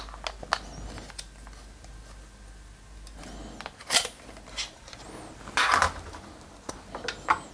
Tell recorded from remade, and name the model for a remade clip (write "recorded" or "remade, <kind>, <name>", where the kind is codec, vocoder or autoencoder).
recorded